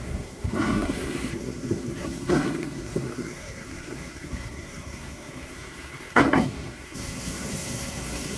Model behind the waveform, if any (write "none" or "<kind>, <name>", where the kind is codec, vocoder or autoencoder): codec, SNAC